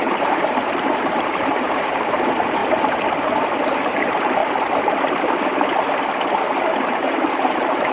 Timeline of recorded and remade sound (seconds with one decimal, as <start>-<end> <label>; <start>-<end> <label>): 0.0-2.6 remade; 2.6-3.4 recorded; 3.4-4.4 remade; 4.4-6.7 recorded; 6.7-7.9 remade